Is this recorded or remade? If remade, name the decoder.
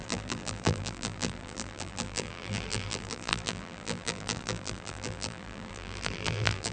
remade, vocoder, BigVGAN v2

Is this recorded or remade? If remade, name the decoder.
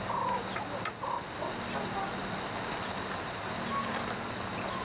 recorded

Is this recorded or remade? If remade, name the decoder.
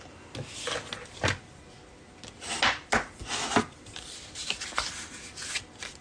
recorded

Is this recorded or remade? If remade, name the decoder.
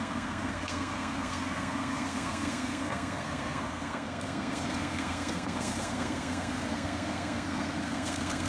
remade, codec, SNAC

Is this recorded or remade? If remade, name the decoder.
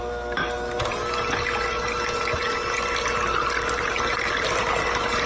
recorded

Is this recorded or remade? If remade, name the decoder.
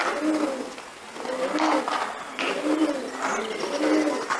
recorded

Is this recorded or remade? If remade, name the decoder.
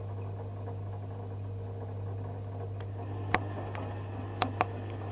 recorded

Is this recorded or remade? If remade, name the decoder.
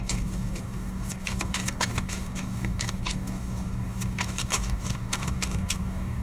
remade, codec, DAC